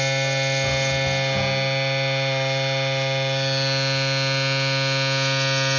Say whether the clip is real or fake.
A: real